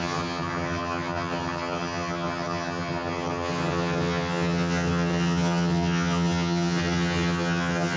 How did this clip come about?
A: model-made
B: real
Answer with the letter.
A